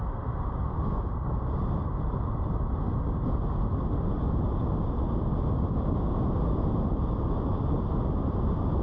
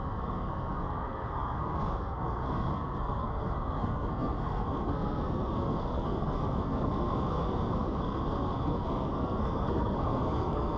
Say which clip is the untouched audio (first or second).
first